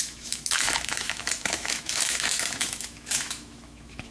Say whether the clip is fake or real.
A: fake